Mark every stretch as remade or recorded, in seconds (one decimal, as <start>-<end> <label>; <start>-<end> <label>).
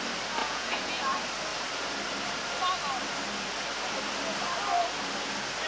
0.0-0.4 recorded; 0.4-1.0 remade; 1.0-5.7 recorded